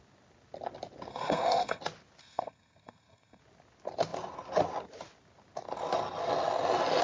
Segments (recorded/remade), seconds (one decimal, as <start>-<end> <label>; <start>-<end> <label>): 0.0-1.1 recorded; 1.1-1.8 remade; 1.8-2.2 recorded; 2.2-3.4 remade; 3.4-7.0 recorded